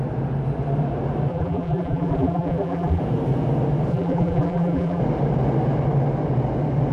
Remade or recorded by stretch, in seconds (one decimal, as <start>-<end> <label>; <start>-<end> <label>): 0.0-1.3 recorded; 1.3-3.0 remade; 3.0-3.9 recorded; 3.9-5.0 remade; 5.0-6.9 recorded